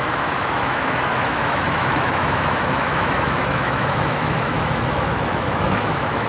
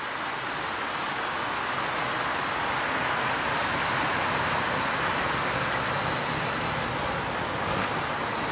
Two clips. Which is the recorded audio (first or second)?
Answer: second